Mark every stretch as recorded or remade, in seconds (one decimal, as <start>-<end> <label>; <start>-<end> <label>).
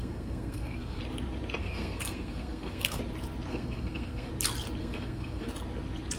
0.0-1.0 remade; 1.0-1.6 recorded; 1.6-3.0 remade; 3.0-3.5 recorded; 3.5-4.3 remade; 4.3-4.8 recorded; 4.8-5.5 remade; 5.5-6.2 recorded